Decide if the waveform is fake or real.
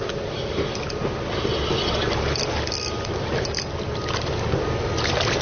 real